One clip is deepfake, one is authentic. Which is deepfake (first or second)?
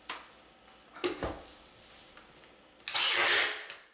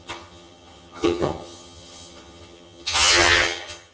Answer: second